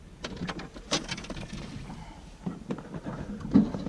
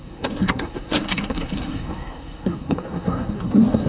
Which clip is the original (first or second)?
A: first